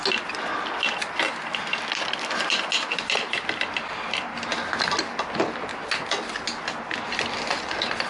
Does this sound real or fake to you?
real